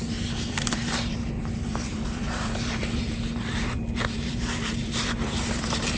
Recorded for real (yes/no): no